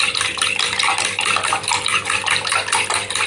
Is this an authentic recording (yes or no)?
yes